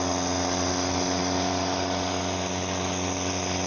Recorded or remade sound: recorded